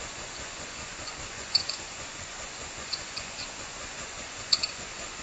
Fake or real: fake